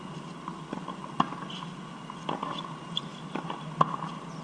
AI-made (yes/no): no